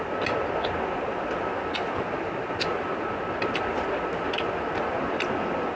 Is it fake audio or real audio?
real